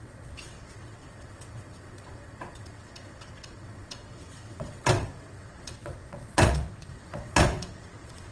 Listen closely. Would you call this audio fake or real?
fake